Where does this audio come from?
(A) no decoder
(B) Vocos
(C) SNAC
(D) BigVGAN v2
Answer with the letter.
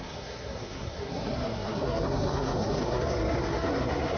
C